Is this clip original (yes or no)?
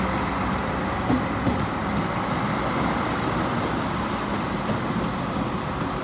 yes